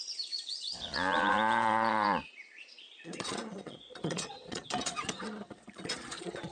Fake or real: fake